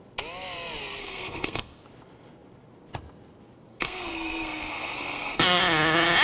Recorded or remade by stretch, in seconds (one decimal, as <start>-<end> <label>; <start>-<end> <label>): 0.0-1.0 recorded; 1.0-1.8 remade; 1.8-3.7 recorded; 3.7-5.6 remade; 5.6-6.2 recorded